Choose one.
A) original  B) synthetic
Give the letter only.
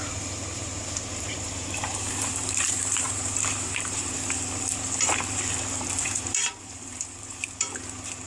B